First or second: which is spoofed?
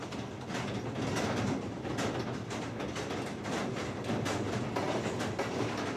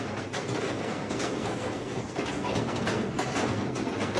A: second